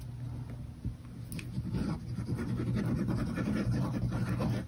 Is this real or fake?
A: real